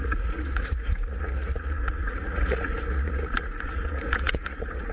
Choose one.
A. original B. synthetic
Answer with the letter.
B